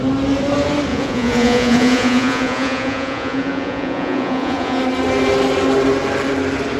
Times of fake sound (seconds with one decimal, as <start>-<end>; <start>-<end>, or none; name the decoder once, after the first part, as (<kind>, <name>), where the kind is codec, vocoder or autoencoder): 0.9-4.8 (vocoder, Vocos)

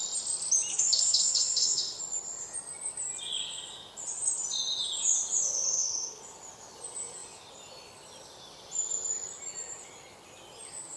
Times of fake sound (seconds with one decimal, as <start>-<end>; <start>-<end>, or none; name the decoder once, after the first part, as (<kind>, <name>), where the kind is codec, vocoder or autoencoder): 0.7-2.0 (codec, SNAC); 5.7-6.2

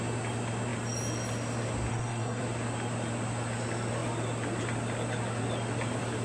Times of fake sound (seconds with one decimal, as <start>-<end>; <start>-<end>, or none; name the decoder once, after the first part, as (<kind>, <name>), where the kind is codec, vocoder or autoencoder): 1.9-2.4 (codec, SNAC)